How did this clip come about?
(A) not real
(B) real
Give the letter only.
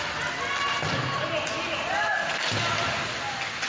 B